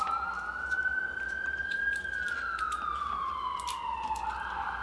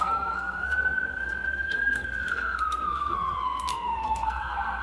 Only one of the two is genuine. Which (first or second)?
first